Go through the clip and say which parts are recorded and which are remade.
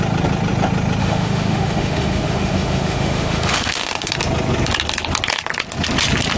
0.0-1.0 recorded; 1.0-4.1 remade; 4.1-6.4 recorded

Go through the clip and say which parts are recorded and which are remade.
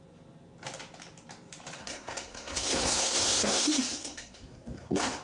0.0-1.8 recorded; 1.8-5.2 remade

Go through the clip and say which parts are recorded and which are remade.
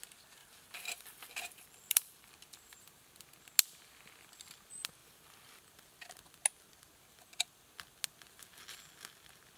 0.0-0.4 recorded; 0.4-2.3 remade; 2.3-5.0 recorded; 5.0-5.6 remade; 5.6-9.6 recorded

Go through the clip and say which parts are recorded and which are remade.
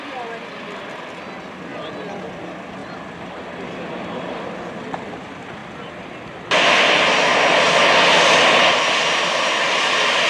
0.0-10.3 recorded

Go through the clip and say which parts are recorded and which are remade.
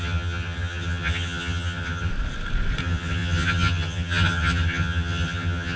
0.0-2.1 remade; 2.1-2.8 recorded; 2.8-5.8 remade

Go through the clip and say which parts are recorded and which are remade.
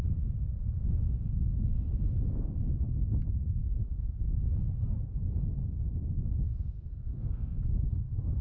0.0-6.5 recorded; 6.5-7.6 remade; 7.6-8.4 recorded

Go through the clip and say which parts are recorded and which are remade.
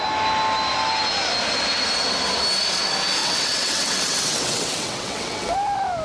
0.0-3.2 recorded; 3.2-5.5 remade; 5.5-6.0 recorded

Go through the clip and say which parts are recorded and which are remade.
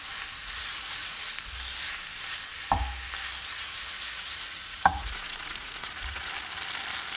0.0-0.4 recorded; 0.4-1.3 remade; 1.3-3.5 recorded; 3.5-6.3 remade; 6.3-7.2 recorded